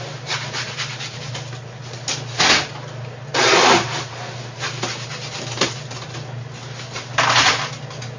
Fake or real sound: real